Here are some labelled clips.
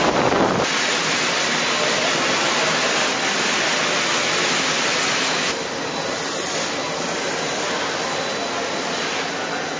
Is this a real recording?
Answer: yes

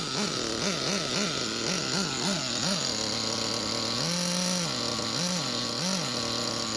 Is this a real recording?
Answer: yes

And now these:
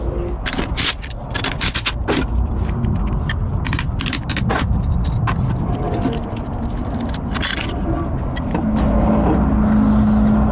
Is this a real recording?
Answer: yes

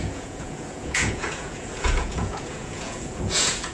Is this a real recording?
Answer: no